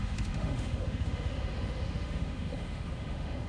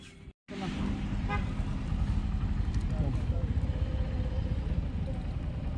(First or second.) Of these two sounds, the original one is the second